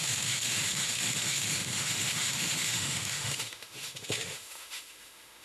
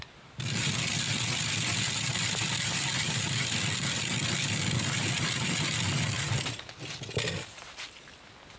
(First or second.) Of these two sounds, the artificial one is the first